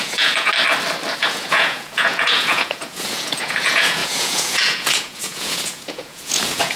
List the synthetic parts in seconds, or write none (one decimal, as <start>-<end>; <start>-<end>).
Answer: 0.0-0.5; 1.2-6.8